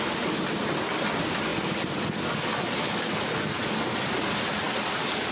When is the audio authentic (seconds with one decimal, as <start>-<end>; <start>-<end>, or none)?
0.0-5.3